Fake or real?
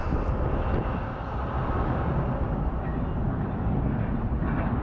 real